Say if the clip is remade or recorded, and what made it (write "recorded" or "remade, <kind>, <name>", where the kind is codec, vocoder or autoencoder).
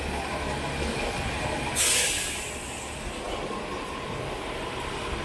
recorded